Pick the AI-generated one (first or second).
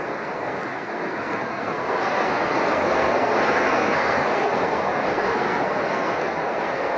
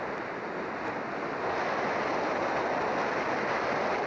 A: first